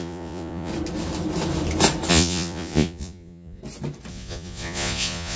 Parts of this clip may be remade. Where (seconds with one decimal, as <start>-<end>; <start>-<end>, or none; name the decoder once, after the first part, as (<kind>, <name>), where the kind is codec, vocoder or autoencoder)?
0.0-0.7 (vocoder, Vocos); 2.1-3.6; 4.1-5.4